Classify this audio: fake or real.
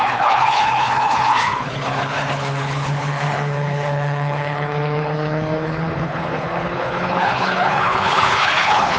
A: fake